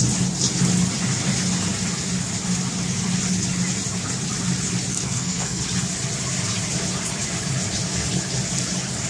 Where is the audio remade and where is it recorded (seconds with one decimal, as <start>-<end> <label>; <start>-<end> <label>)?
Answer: 0.0-4.9 recorded; 4.9-5.6 remade; 5.6-9.1 recorded